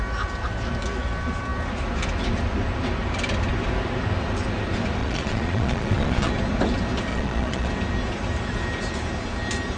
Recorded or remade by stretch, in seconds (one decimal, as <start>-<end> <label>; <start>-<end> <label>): 0.0-5.0 recorded; 5.0-6.3 remade; 6.3-7.1 recorded; 7.1-7.7 remade; 7.7-9.8 recorded